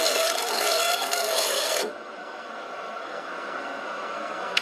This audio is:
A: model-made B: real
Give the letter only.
A